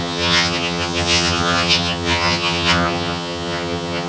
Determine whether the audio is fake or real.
fake